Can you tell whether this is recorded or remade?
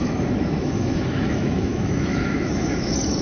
remade